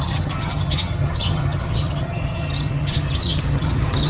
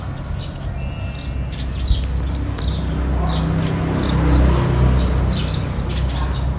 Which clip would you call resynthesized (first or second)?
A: first